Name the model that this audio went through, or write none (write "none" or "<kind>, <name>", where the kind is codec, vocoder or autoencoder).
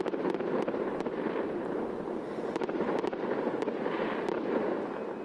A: none